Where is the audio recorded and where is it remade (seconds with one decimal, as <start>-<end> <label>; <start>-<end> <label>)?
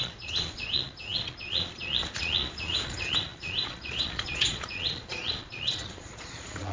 0.0-6.7 remade